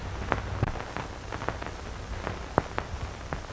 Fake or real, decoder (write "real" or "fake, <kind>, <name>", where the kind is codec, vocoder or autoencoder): real